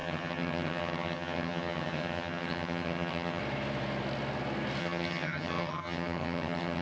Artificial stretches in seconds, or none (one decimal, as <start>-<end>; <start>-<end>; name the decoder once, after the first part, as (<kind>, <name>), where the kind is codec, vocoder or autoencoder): 0.0-3.4 (vocoder, HiFi-GAN); 4.8-6.8